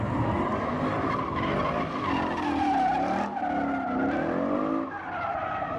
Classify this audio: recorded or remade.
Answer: recorded